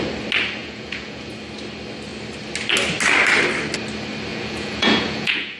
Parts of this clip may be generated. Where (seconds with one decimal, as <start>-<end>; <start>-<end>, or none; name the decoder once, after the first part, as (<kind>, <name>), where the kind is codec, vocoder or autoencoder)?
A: 0.6-1.2 (vocoder, Vocos); 4.3-5.6

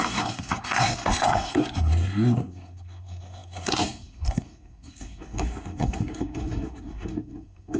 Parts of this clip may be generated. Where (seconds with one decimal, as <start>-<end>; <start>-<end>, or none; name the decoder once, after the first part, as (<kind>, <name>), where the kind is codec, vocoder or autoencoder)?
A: 0.0-7.8 (codec, SNAC)

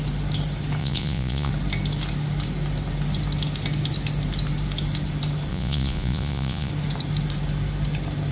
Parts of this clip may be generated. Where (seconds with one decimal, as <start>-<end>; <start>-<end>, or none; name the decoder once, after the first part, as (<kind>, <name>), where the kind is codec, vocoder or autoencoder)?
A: 0.8-1.5 (vocoder, Vocos); 5.5-6.7

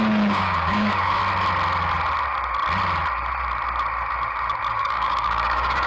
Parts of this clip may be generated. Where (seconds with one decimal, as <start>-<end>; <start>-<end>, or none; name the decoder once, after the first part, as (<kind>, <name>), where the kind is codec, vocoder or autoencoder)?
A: 0.0-1.2 (codec, DAC); 4.7-5.9